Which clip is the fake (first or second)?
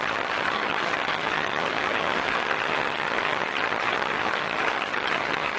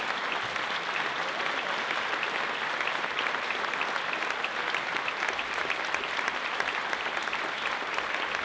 first